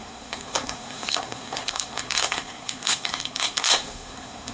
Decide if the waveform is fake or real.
fake